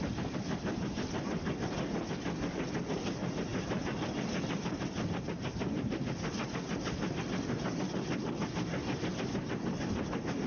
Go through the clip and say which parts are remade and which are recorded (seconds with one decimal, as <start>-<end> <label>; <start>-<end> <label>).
0.0-10.5 recorded